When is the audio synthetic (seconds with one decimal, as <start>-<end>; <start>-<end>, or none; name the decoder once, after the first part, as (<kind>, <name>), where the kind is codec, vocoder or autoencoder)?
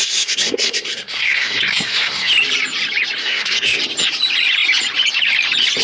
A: 0.0-2.3 (codec, SNAC); 3.2-3.8